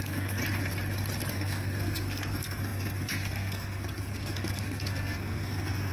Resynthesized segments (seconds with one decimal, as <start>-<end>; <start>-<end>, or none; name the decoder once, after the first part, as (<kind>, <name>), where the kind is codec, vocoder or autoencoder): 0.0-0.4 (codec, SNAC); 1.3-5.9